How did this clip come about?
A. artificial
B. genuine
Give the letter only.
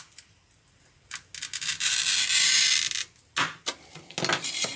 B